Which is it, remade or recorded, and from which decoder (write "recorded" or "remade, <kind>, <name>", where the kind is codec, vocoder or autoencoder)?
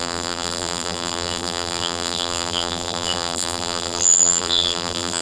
remade, vocoder, BigVGAN v2